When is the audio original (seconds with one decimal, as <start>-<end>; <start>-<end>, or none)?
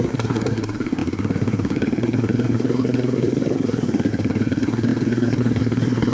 none